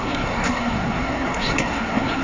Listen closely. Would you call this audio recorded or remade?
remade